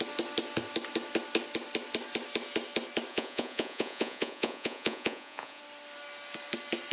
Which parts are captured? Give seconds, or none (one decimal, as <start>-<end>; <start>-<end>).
0.0-3.1; 5.6-6.9